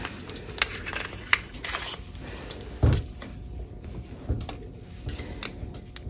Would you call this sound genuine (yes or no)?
yes